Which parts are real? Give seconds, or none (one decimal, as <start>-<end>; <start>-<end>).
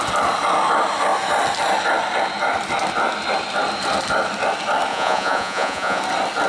0.0-4.9; 6.0-6.5